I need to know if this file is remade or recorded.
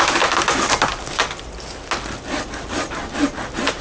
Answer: recorded